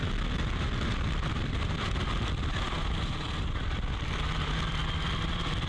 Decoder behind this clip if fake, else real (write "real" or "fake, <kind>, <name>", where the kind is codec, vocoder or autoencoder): fake, vocoder, BigVGAN v2